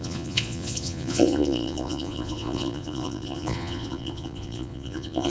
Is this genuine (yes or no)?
no